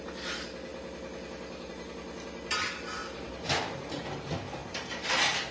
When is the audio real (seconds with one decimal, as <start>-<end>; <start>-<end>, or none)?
0.0-5.5